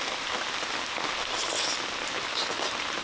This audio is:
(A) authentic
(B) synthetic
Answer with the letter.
A